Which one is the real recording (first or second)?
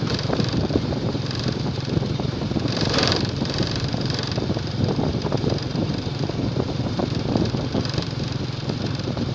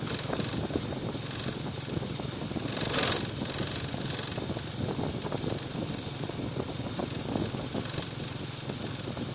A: second